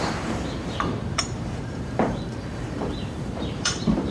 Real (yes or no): no